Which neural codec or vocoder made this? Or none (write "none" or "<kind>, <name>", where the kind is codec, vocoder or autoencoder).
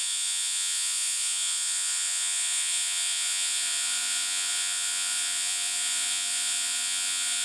vocoder, Vocos